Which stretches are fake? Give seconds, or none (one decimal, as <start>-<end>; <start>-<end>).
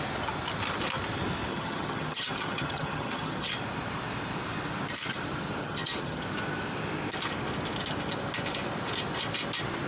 1.5-3.5; 5.6-6.2